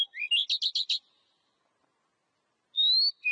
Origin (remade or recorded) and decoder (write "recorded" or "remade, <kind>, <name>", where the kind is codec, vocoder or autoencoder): recorded